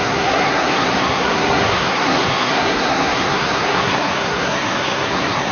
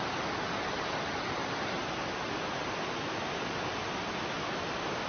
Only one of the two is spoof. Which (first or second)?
first